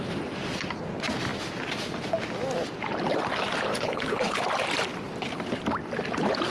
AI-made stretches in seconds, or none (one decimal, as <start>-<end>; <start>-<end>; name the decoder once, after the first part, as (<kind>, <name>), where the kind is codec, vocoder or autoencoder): 3.7-4.4 (codec, HILCodec)